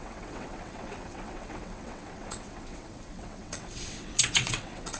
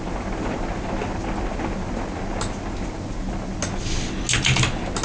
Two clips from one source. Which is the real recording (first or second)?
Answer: second